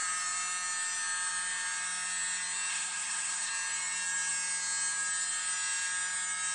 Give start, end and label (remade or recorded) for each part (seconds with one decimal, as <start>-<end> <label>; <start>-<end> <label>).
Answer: 0.0-2.7 recorded; 2.7-3.5 remade; 3.5-6.5 recorded